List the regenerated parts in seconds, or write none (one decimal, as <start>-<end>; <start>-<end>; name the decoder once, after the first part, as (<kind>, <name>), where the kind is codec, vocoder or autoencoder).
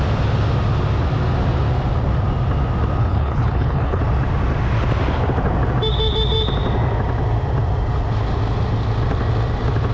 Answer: 3.0-4.0 (codec, HILCodec)